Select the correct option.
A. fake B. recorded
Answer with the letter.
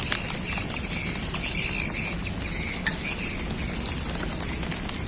B